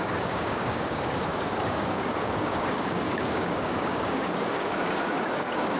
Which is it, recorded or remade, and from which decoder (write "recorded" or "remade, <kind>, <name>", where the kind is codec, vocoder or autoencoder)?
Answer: remade, codec, DAC